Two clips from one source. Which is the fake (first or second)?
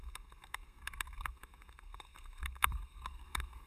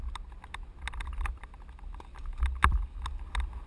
first